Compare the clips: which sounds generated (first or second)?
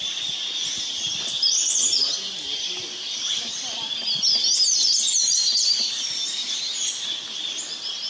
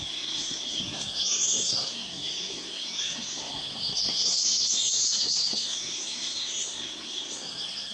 second